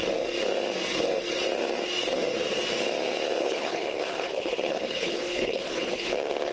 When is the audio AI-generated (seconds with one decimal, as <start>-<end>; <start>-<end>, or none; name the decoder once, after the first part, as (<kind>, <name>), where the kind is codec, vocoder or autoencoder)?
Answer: 3.4-6.1 (codec, HILCodec)